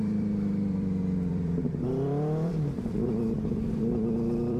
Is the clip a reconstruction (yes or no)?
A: yes